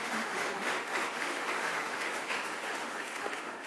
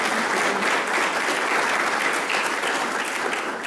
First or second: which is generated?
first